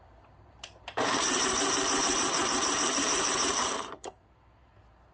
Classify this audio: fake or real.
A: fake